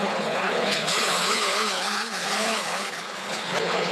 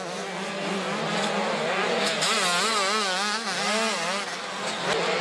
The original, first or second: second